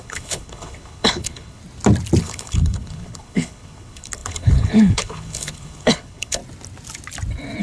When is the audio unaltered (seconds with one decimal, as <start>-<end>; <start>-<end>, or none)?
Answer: 1.6-2.2; 6.4-7.6